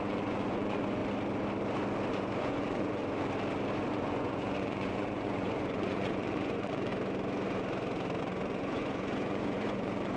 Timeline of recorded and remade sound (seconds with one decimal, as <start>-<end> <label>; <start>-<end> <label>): 0.0-1.0 remade; 1.0-2.1 recorded; 2.1-3.0 remade; 3.0-3.9 recorded; 3.9-6.9 remade; 6.9-8.2 recorded; 8.2-10.2 remade